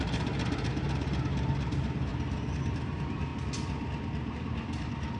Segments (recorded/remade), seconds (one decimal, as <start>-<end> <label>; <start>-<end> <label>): 0.0-2.1 remade; 2.1-2.7 recorded; 2.7-3.3 remade; 3.3-4.3 recorded; 4.3-5.2 remade

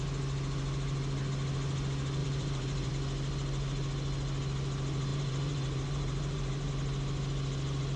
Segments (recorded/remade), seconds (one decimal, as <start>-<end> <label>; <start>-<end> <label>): 0.0-2.2 recorded; 2.2-2.9 remade; 2.9-5.1 recorded; 5.1-6.7 remade; 6.7-8.0 recorded

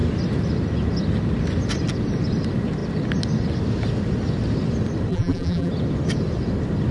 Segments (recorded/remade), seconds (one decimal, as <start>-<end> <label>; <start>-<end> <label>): 0.0-5.1 recorded; 5.1-5.7 remade; 5.7-6.9 recorded